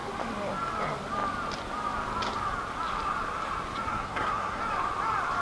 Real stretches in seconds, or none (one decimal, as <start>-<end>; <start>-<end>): 0.0-3.9; 4.6-5.4